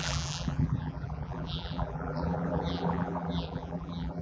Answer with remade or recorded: remade